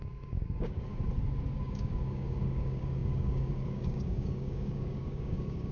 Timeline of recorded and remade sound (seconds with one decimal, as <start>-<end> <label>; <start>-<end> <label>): 0.0-0.9 remade; 0.9-1.5 recorded; 1.5-5.7 remade

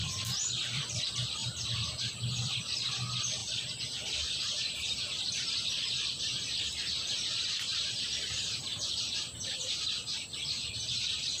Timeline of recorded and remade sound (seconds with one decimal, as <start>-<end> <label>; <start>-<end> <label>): 0.0-0.9 remade; 0.9-1.4 recorded; 1.4-2.1 remade; 2.1-7.7 recorded; 7.7-9.9 remade; 9.9-11.4 recorded